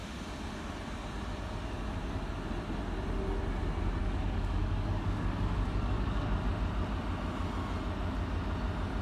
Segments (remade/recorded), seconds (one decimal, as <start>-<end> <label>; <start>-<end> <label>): 0.0-4.0 recorded; 4.0-6.4 remade; 6.4-9.0 recorded